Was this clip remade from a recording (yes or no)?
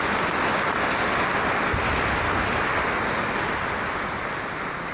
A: no